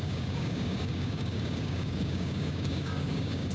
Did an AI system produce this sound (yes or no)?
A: yes